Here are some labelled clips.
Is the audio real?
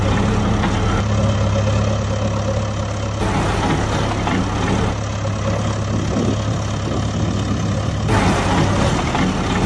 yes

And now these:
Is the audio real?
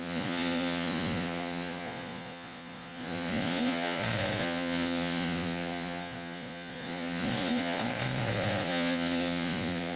no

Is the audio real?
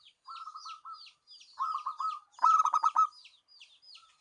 yes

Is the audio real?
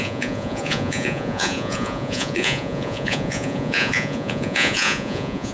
no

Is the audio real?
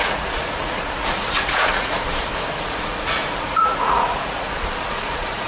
no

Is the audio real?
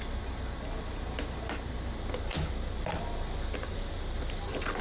yes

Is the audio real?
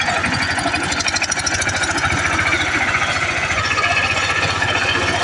no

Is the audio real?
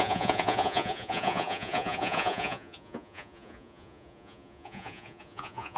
no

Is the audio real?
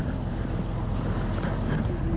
yes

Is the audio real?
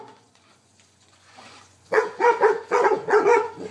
no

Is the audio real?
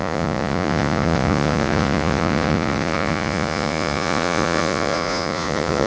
no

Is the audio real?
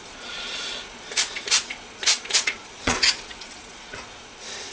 no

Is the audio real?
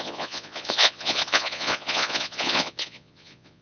no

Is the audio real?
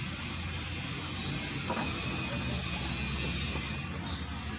yes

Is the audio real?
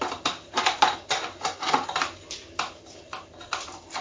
yes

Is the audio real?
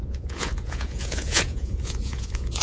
no